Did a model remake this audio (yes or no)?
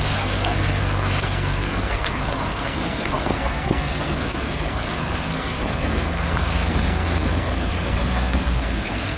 yes